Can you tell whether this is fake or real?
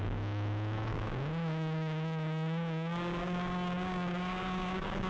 fake